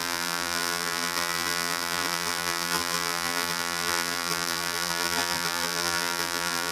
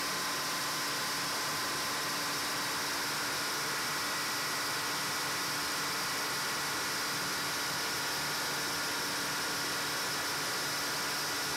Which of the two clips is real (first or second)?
second